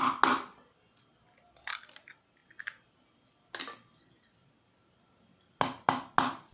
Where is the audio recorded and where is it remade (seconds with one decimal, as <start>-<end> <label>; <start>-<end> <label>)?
0.0-6.5 recorded